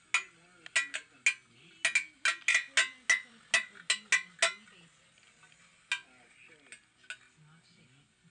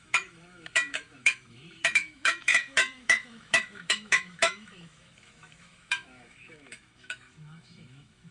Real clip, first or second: first